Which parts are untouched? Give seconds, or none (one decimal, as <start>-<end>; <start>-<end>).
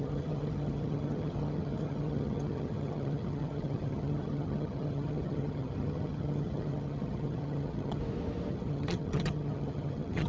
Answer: 8.0-8.5